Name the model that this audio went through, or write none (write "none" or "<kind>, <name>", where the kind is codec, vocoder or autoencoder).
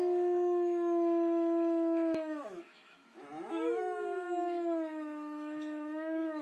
autoencoder, DAC-VAE